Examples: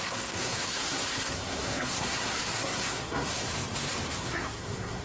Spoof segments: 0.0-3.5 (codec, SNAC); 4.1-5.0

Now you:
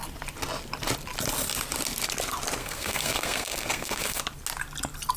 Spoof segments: 2.6-4.2 (codec, SNAC)

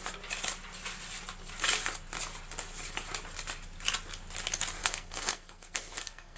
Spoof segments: 4.8-6.4 (codec, SNAC)

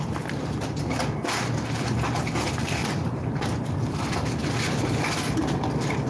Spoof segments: none

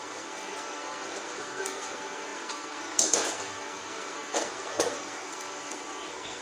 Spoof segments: 0.0-6.4 (codec, SNAC)

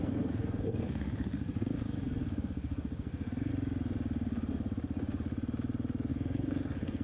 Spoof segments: 0.0-3.5 (codec, SNAC); 6.1-7.0